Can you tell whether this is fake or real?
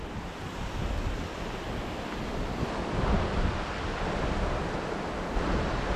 real